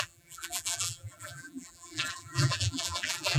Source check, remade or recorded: remade